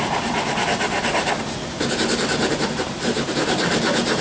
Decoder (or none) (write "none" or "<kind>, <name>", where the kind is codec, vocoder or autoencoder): vocoder, BigVGAN v2